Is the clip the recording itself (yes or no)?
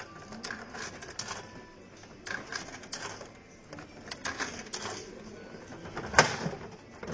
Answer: yes